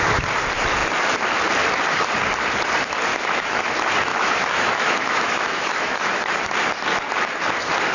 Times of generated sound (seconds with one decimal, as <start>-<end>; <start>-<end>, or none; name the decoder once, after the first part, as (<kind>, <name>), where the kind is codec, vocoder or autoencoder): 3.1-3.6 (autoencoder, DAC-VAE); 4.1-6.3